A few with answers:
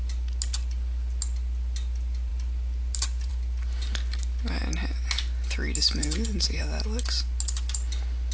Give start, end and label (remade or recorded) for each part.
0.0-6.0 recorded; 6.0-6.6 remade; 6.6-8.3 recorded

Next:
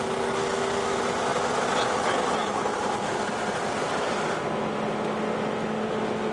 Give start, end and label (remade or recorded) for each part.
0.0-6.3 recorded

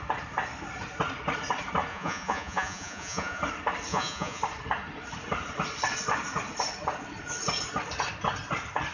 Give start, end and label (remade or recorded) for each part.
0.0-1.9 recorded; 1.9-3.4 remade; 3.4-3.9 recorded; 3.9-4.4 remade; 4.4-8.9 recorded

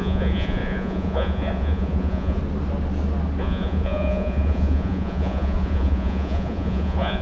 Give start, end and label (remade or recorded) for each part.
0.0-2.4 remade; 2.4-3.4 recorded; 3.4-7.2 remade

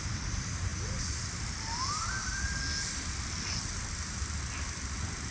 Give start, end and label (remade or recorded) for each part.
0.0-5.3 recorded

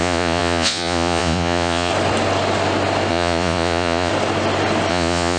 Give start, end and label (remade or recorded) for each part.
0.0-1.9 remade; 1.9-3.1 recorded; 3.1-4.1 remade; 4.1-4.9 recorded; 4.9-5.4 remade

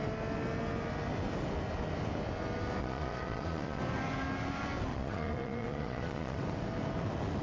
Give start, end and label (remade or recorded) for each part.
0.0-2.8 recorded; 2.8-3.8 remade; 3.8-4.9 recorded; 4.9-6.4 remade; 6.4-7.4 recorded

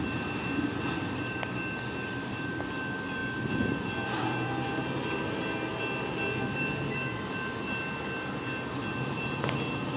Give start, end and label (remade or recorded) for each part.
0.0-10.0 recorded